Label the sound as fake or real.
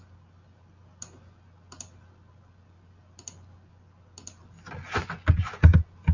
real